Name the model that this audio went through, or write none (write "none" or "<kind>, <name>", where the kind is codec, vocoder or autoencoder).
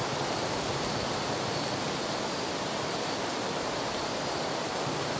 none